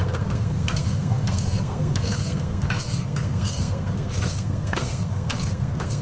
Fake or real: fake